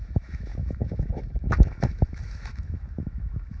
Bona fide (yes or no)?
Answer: no